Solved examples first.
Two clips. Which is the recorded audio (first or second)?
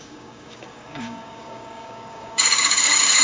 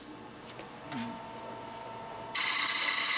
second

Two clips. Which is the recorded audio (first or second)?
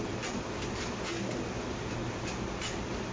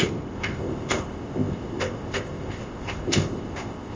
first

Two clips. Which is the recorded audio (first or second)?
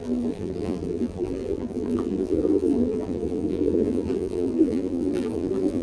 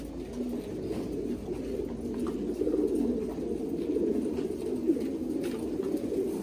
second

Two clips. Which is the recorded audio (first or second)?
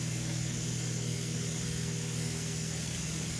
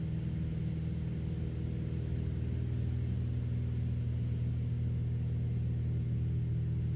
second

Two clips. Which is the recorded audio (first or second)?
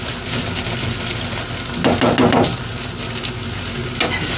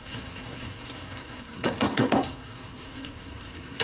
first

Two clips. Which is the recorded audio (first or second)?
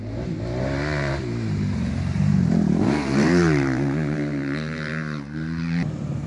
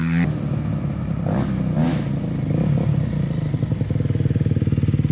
second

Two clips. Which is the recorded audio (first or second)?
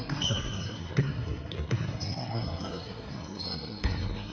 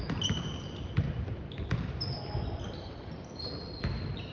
second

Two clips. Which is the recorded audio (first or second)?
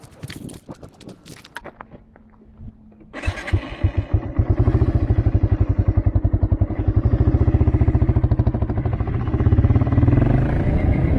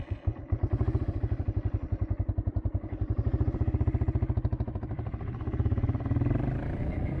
first